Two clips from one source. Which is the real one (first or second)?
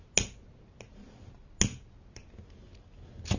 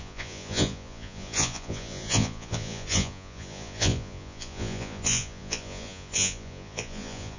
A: first